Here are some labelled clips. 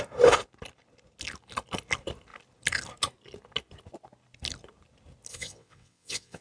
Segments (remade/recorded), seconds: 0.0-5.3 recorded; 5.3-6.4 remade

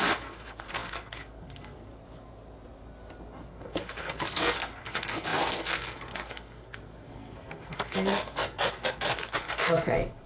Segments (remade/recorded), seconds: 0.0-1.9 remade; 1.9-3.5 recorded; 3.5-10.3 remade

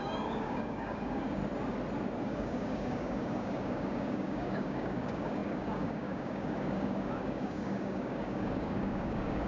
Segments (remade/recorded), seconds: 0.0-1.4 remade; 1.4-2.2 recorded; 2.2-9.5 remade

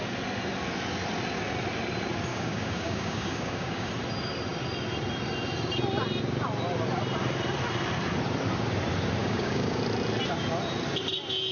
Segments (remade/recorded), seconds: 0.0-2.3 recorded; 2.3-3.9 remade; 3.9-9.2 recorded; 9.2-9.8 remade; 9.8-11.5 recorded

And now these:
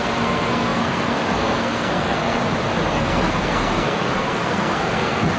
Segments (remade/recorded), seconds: 0.0-2.4 remade; 2.4-2.9 recorded; 2.9-5.4 remade

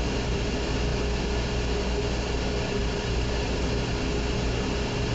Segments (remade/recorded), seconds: 0.0-2.8 recorded; 2.8-3.9 remade; 3.9-5.1 recorded